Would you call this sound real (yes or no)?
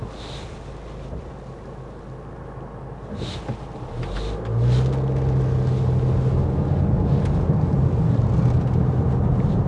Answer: yes